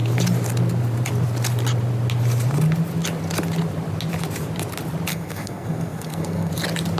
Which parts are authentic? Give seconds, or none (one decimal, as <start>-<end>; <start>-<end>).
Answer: 0.0-5.1; 6.5-7.0